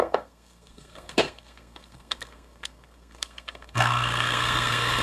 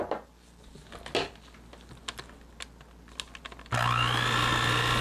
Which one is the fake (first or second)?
first